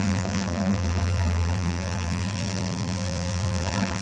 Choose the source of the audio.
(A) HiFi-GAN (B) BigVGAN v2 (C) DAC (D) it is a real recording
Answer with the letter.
B